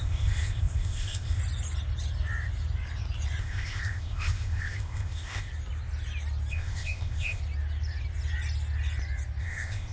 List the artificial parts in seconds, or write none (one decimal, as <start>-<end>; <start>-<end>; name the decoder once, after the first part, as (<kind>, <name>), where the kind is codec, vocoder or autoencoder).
0.0-1.4 (codec, ZipCodec); 3.4-5.5; 6.5-7.4; 9.4-9.9